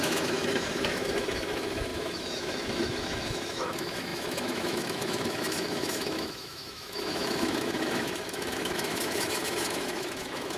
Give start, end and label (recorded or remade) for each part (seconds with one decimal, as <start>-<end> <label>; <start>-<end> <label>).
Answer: 0.0-10.6 remade